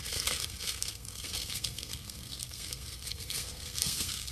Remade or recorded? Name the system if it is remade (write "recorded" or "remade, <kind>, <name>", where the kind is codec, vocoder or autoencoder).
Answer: remade, codec, SNAC